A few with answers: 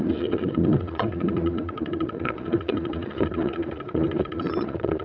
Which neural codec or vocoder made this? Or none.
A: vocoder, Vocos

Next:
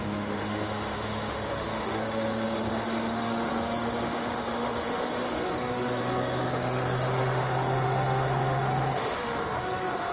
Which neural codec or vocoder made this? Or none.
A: autoencoder, DAC-VAE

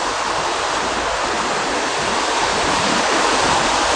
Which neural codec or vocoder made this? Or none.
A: none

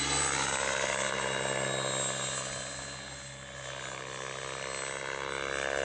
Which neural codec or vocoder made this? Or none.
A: none